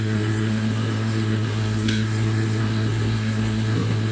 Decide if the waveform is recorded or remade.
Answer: remade